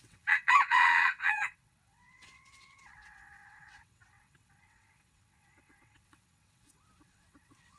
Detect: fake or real fake